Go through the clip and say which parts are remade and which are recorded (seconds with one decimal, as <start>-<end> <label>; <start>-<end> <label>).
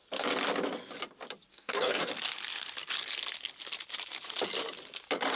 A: 0.0-1.5 recorded; 1.5-2.1 remade; 2.1-5.4 recorded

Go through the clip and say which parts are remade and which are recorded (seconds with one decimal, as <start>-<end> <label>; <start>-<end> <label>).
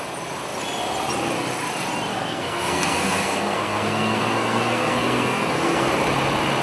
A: 0.0-2.1 recorded; 2.1-5.9 remade; 5.9-6.6 recorded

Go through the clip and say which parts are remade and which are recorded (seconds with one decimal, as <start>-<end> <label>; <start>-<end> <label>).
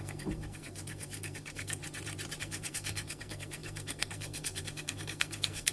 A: 0.0-1.8 remade; 1.8-2.4 recorded; 2.4-5.7 remade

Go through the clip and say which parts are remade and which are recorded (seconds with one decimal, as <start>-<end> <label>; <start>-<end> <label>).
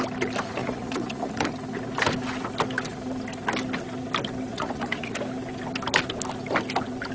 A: 0.0-0.6 recorded; 0.6-1.5 remade; 1.5-4.5 recorded; 4.5-5.2 remade; 5.2-7.1 recorded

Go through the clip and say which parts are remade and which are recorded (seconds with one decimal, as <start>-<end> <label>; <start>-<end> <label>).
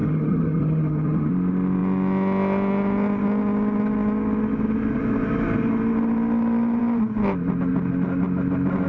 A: 0.0-1.3 remade; 1.3-8.9 recorded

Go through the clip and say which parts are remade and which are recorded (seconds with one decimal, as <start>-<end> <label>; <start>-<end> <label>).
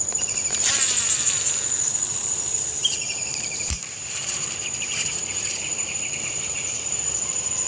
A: 0.0-2.8 recorded; 2.8-7.3 remade; 7.3-7.7 recorded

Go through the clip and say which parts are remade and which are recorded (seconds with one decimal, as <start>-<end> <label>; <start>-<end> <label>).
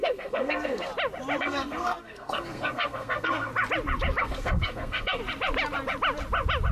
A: 0.0-0.9 remade; 0.9-1.4 recorded; 1.4-3.5 remade; 3.5-4.2 recorded; 4.2-5.2 remade; 5.2-6.7 recorded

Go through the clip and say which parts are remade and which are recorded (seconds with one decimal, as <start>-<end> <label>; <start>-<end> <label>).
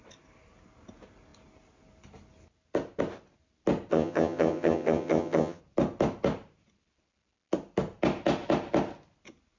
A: 0.0-3.9 recorded; 3.9-5.6 remade; 5.6-9.6 recorded